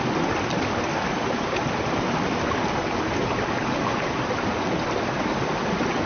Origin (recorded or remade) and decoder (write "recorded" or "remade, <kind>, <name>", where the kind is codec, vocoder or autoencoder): recorded